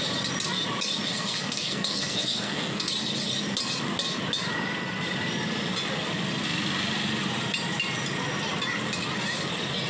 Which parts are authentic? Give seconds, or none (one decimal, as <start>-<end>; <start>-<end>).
0.0-1.1; 2.9-9.9